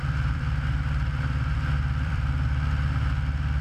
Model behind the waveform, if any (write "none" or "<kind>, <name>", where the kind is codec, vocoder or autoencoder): vocoder, BigVGAN v2